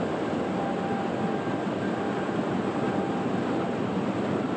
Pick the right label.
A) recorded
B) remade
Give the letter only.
A